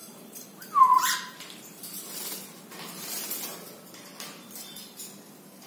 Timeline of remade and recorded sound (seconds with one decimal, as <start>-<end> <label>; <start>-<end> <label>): 0.0-3.4 remade; 3.4-5.7 recorded